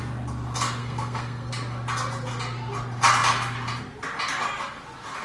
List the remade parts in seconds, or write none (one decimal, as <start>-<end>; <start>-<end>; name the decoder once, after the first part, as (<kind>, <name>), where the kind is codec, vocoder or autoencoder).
0.8-1.5 (codec, SNAC)